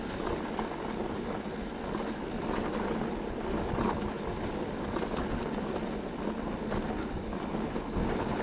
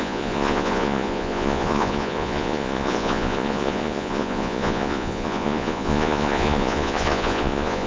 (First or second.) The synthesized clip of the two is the second